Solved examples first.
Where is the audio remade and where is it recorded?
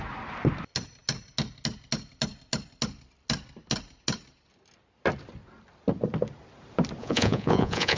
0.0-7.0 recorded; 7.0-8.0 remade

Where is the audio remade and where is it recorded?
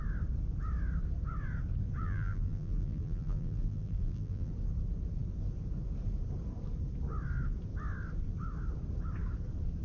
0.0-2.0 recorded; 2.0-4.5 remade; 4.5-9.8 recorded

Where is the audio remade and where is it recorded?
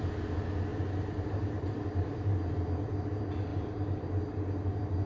0.0-0.7 recorded; 0.7-2.4 remade; 2.4-3.5 recorded; 3.5-4.1 remade; 4.1-5.1 recorded